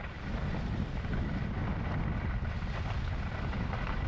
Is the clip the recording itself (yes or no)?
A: yes